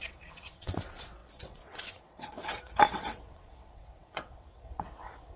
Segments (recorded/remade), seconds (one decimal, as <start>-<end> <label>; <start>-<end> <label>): 0.0-5.4 remade